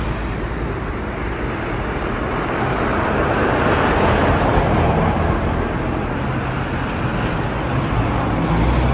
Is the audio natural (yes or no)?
yes